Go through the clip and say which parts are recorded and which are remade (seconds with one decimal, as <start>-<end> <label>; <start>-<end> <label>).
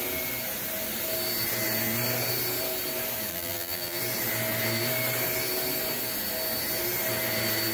0.0-3.3 recorded; 3.3-4.0 remade; 4.0-7.7 recorded